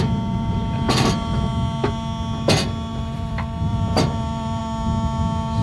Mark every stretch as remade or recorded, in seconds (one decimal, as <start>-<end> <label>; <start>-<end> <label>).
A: 0.0-2.9 recorded; 2.9-4.6 remade; 4.6-5.6 recorded

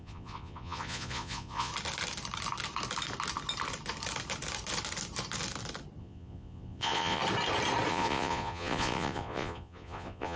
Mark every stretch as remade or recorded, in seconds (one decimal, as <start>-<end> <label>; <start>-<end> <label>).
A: 0.0-1.7 remade; 1.7-6.0 recorded; 6.0-7.2 remade; 7.2-7.9 recorded; 7.9-10.4 remade